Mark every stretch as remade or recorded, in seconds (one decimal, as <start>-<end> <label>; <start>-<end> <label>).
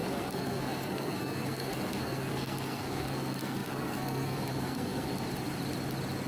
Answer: 0.0-5.1 remade; 5.1-6.3 recorded